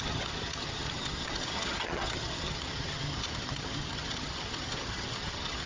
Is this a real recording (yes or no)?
no